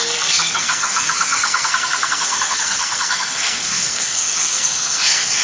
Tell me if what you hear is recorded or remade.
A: remade